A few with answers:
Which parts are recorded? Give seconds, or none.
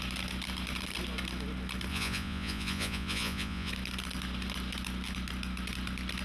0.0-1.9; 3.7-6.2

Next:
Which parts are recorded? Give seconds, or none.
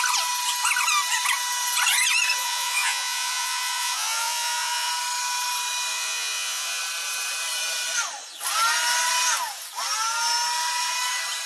0.0-2.4; 4.9-5.9; 6.8-11.5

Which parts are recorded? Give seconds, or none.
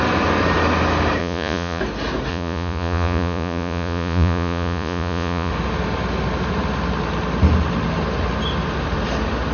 0.0-1.2; 1.8-2.3; 5.5-9.5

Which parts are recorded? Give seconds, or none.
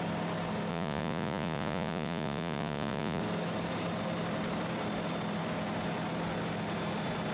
0.0-0.7; 3.2-7.3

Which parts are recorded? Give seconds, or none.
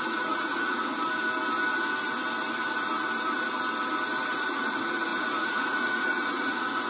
0.9-4.3